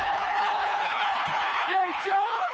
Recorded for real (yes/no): no